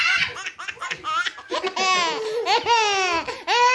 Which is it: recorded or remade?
recorded